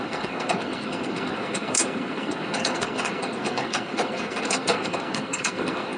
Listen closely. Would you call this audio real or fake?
fake